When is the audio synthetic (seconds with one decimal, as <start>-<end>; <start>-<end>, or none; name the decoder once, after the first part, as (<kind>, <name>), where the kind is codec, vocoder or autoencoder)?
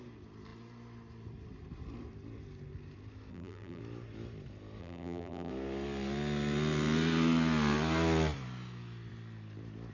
3.3-3.8 (vocoder, BigVGAN v2); 4.8-5.5